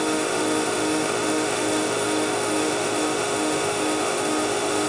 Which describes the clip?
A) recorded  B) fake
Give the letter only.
B